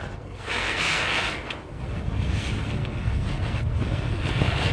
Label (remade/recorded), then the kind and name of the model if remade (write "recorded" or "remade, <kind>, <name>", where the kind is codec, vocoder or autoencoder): remade, codec, SNAC